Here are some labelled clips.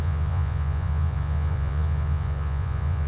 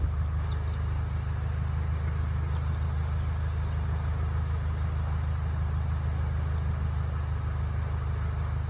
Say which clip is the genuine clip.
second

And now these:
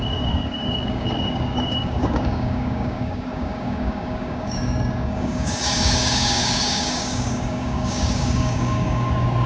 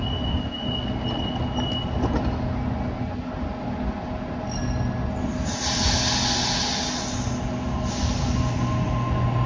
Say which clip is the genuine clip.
second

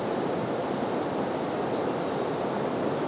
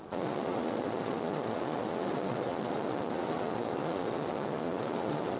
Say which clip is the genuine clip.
first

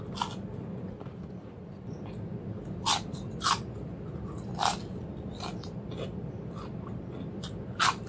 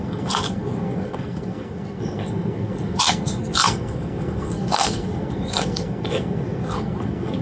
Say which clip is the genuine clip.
first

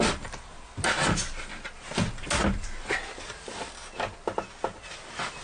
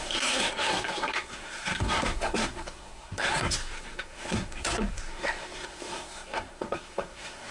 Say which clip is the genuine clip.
first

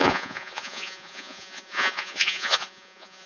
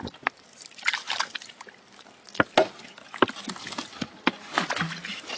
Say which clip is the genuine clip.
second